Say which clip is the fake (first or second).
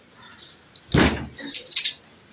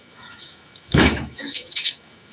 second